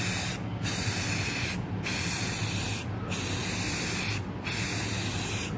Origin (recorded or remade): recorded